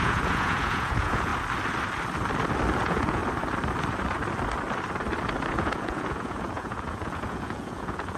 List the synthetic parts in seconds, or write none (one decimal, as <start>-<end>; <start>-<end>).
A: 0.0-1.3; 2.8-3.2; 5.4-8.2